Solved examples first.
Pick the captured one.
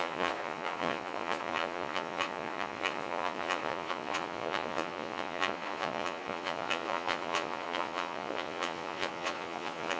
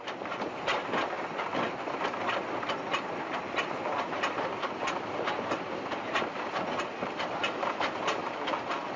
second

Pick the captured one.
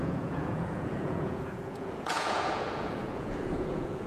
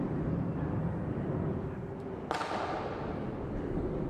second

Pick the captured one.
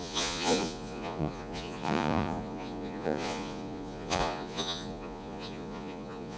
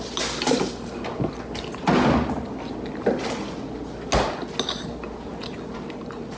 second